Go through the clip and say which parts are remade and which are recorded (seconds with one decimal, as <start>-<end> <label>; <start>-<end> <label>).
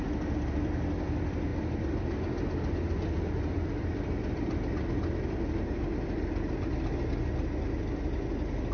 0.0-8.7 recorded